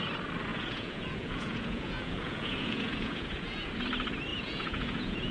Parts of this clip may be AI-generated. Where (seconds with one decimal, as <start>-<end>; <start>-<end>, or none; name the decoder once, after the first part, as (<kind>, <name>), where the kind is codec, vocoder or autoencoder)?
0.5-3.7 (vocoder, Vocos); 4.3-5.3